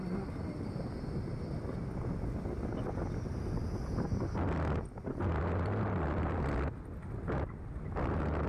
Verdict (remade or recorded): recorded